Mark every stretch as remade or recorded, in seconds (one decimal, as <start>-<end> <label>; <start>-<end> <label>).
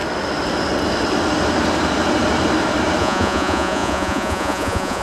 0.0-3.0 recorded; 3.0-5.0 remade